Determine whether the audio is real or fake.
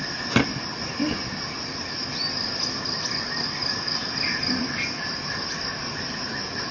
real